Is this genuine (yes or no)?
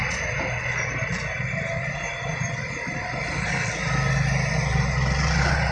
yes